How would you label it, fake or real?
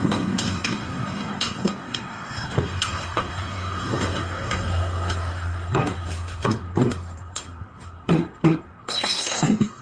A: fake